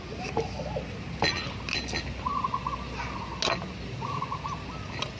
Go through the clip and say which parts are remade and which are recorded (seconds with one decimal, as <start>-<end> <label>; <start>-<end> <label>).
0.0-5.2 recorded